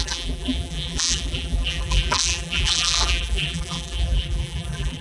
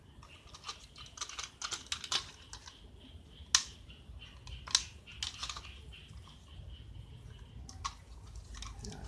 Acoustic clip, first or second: second